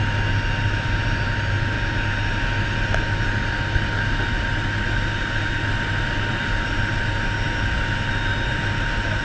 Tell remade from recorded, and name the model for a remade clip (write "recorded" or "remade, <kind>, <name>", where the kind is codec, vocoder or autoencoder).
recorded